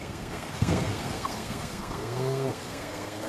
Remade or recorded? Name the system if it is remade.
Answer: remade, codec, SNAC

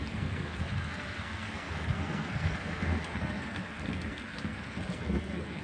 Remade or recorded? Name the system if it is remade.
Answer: remade, codec, SNAC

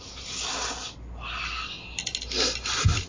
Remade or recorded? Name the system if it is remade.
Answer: recorded